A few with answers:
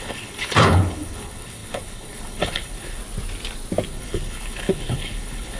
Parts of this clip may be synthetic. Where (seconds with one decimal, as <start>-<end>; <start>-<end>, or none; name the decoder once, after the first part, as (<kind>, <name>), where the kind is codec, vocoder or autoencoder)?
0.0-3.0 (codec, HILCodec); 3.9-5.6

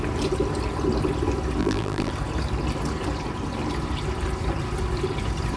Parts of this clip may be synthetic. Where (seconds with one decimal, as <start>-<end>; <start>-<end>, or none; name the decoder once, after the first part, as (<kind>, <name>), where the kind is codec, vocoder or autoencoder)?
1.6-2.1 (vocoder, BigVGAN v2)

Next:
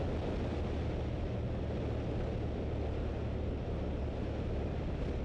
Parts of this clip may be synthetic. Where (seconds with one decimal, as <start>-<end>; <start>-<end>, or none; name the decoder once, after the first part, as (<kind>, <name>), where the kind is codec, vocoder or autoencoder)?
none

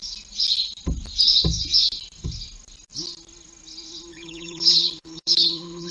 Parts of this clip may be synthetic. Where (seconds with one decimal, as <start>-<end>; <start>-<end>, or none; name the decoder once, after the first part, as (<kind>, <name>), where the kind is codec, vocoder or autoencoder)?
4.1-5.9 (codec, HILCodec)

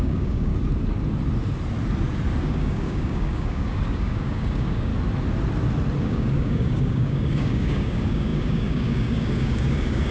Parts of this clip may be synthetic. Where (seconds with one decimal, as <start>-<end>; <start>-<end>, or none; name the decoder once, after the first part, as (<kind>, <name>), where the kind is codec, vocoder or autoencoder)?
0.0-0.5 (codec, DAC); 2.4-4.9; 6.0-10.1